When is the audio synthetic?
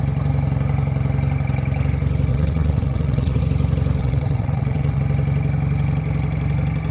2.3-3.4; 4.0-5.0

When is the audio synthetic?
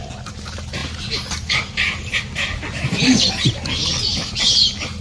0.8-3.3; 3.8-5.0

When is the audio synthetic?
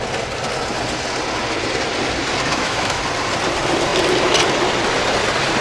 2.5-3.0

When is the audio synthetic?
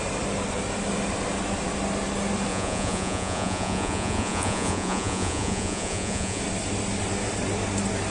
2.5-6.4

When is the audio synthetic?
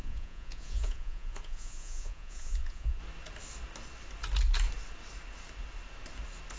0.0-3.0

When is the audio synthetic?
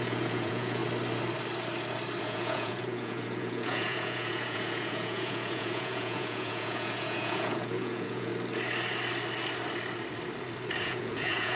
0.0-0.8; 2.2-8.3; 10.8-11.6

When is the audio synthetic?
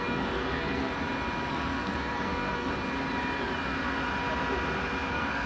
0.0-0.9; 1.5-2.7; 5.1-5.5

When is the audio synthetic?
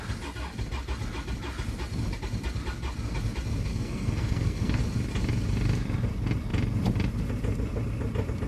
3.7-4.8